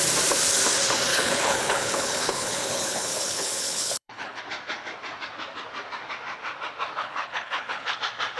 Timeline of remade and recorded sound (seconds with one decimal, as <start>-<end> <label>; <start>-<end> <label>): 0.0-1.1 recorded; 1.1-4.4 remade; 4.4-7.0 recorded; 7.0-8.0 remade; 8.0-8.4 recorded